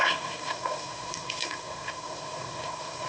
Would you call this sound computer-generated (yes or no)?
yes